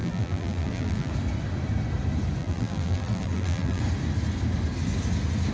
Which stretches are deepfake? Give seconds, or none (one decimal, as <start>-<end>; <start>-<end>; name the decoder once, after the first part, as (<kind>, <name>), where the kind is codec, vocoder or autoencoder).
0.0-1.1 (vocoder, BigVGAN v2); 2.4-3.8